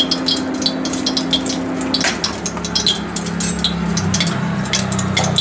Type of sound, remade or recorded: recorded